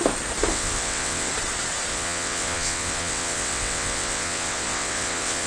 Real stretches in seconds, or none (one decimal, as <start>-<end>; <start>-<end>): 0.0-0.5; 1.3-1.9

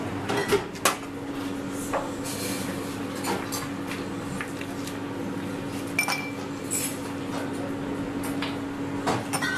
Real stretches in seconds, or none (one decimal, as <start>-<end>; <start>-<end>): 0.0-9.6